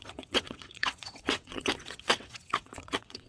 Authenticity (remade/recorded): remade